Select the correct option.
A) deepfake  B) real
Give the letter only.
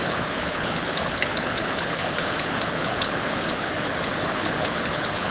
A